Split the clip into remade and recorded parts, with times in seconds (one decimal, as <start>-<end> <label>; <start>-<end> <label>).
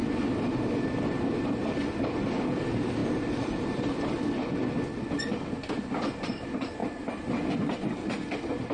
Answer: 0.0-2.2 remade; 2.2-3.0 recorded; 3.0-4.2 remade; 4.2-8.7 recorded